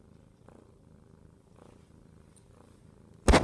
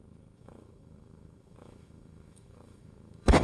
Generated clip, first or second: second